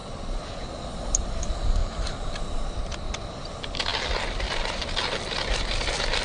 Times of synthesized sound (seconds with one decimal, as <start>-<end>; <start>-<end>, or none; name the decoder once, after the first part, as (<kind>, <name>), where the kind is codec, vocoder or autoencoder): 1.8-2.8 (vocoder, BigVGAN v2)